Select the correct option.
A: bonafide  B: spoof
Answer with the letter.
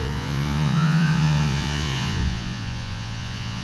B